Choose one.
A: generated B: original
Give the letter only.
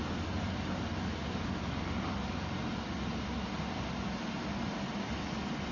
B